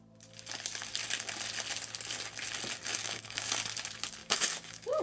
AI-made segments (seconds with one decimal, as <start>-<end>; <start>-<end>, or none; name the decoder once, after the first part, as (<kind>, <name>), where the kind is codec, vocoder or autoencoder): 2.9-3.6 (codec, DAC); 4.2-5.0